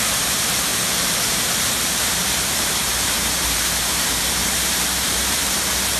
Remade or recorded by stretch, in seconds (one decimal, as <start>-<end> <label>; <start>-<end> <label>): 0.0-6.0 remade